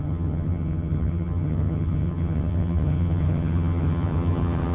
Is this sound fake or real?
fake